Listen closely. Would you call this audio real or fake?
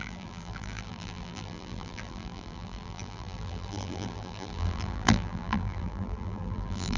fake